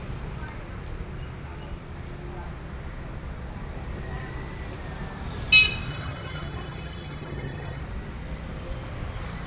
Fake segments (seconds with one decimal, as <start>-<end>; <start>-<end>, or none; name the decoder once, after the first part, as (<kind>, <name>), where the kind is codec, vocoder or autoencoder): 5.9-7.8 (vocoder, HiFi-GAN)